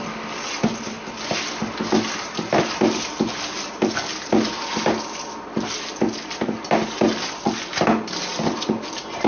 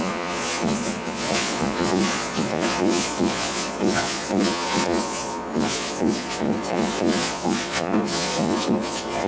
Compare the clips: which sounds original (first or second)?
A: first